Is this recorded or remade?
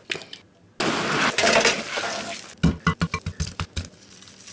recorded